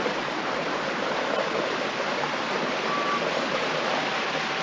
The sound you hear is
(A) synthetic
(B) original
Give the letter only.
B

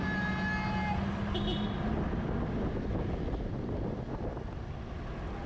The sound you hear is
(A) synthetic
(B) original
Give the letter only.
B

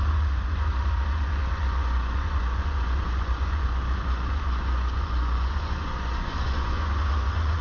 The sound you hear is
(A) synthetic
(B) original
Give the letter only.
A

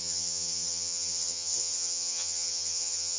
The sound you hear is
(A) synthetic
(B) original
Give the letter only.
A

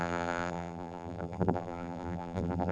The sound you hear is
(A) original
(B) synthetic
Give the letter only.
B